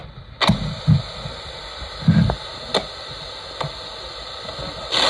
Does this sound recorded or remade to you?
recorded